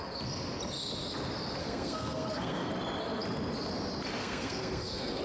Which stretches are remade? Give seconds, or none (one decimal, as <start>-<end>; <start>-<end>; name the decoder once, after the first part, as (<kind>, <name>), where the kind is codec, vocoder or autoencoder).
1.6-2.7 (codec, SNAC); 4.2-5.2